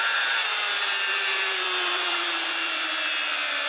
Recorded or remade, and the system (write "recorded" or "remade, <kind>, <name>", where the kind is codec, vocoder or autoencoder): remade, vocoder, BigVGAN v2